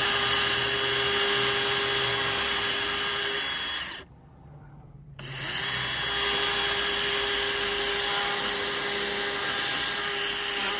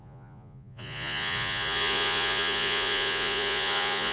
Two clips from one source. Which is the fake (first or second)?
second